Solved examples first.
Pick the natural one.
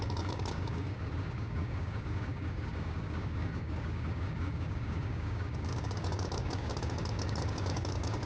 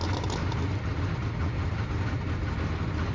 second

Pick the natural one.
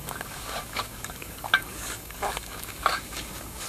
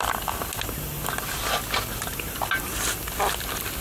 second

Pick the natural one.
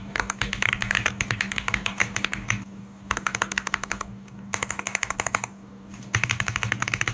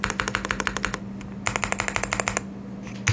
second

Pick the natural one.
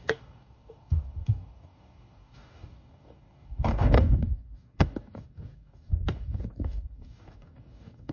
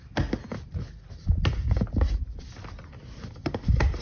second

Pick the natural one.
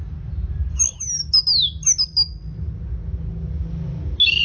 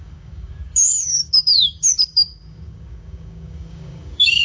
first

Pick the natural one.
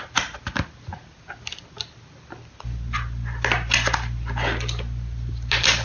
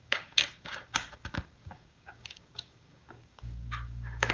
first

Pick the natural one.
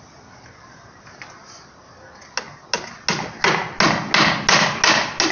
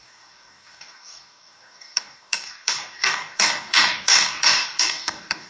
first